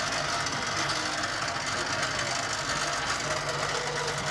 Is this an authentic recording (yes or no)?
yes